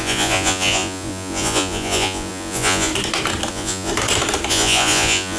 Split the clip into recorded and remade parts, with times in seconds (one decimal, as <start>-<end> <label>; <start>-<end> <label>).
0.0-2.9 remade; 2.9-3.5 recorded; 3.5-3.9 remade; 3.9-4.5 recorded; 4.5-5.4 remade